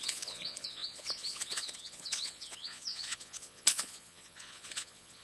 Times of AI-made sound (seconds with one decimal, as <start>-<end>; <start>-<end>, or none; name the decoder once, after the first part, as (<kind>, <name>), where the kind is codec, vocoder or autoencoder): 0.0-5.2 (vocoder, Vocos)